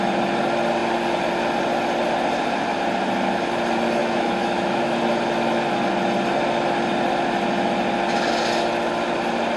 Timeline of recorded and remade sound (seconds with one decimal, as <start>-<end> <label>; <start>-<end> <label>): 0.0-4.0 recorded; 4.0-5.0 remade; 5.0-9.6 recorded